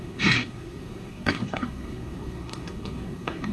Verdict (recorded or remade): remade